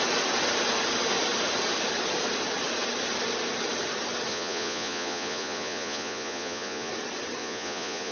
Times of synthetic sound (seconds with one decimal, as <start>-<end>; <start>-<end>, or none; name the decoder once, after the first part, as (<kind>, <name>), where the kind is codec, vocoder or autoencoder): 4.3-6.9 (vocoder, Vocos); 7.4-8.1